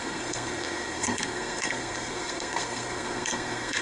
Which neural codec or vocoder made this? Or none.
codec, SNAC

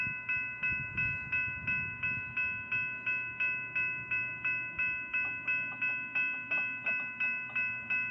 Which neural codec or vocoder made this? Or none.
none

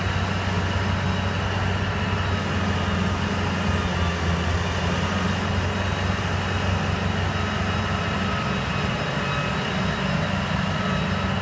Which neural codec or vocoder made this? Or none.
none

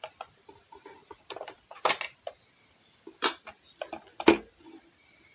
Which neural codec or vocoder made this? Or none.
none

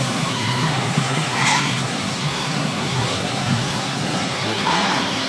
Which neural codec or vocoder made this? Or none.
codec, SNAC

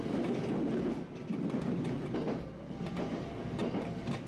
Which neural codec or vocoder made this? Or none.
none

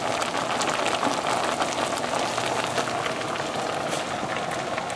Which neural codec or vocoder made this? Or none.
none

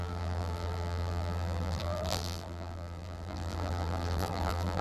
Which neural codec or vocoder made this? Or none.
vocoder, BigVGAN v2